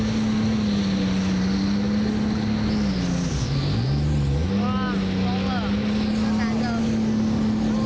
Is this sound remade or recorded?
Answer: recorded